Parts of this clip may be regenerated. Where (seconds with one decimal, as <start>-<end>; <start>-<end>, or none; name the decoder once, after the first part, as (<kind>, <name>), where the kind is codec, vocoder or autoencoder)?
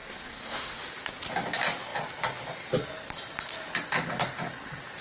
0.0-0.8 (codec, SNAC)